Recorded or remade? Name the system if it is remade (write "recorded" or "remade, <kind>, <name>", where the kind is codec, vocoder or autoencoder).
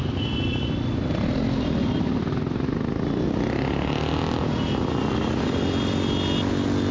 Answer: recorded